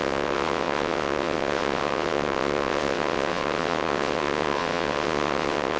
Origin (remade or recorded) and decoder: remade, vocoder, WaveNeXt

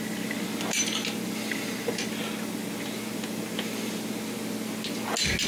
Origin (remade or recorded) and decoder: recorded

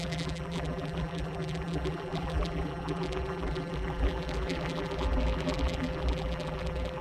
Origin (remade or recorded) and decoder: remade, vocoder, BigVGAN v2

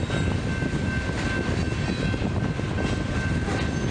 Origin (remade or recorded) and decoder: recorded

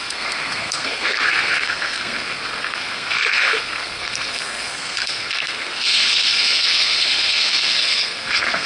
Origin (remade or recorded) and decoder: remade, codec, SNAC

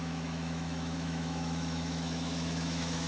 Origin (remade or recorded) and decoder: remade, autoencoder, DAC-VAE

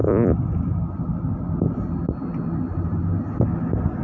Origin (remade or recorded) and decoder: recorded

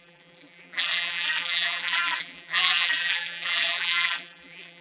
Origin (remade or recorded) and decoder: remade, vocoder, BigVGAN v2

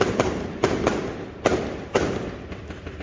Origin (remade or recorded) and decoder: recorded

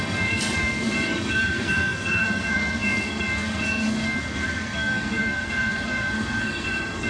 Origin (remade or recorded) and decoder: remade, codec, SNAC